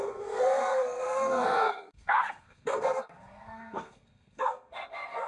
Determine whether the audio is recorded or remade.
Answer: remade